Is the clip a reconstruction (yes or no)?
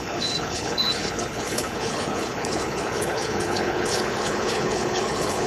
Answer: yes